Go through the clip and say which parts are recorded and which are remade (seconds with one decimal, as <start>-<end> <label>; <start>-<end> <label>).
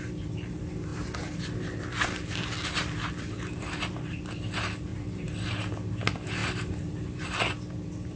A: 0.0-4.9 recorded; 4.9-5.5 remade; 5.5-8.2 recorded